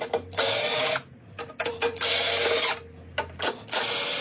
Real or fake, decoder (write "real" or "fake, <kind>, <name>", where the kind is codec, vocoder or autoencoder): real